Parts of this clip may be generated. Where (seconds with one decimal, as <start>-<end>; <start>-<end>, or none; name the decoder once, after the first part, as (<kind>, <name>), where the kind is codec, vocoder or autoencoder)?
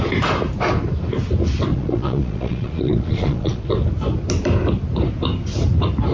1.7-3.6 (vocoder, Vocos)